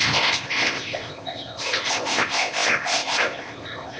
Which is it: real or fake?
fake